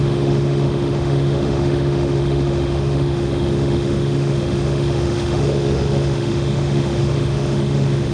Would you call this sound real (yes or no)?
no